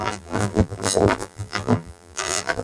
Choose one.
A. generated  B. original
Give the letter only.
A